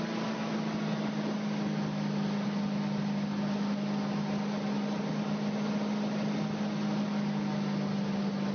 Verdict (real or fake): real